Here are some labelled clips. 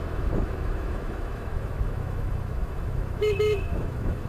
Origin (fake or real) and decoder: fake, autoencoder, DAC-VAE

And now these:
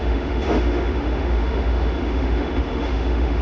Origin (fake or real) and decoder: fake, autoencoder, DAC-VAE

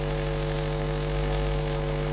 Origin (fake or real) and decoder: fake, autoencoder, DAC-VAE